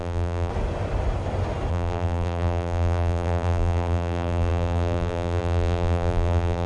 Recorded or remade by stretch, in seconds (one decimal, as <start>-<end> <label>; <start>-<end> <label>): 0.0-0.5 remade; 0.5-1.7 recorded; 1.7-6.7 remade